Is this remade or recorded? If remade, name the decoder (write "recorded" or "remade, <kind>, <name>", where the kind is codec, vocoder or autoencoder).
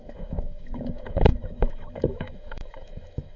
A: remade, autoencoder, DAC-VAE